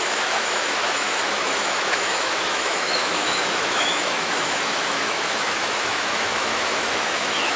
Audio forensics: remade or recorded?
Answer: remade